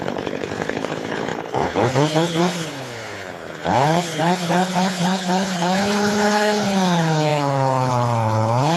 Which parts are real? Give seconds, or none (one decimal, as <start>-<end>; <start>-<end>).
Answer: none